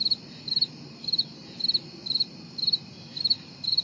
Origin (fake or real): fake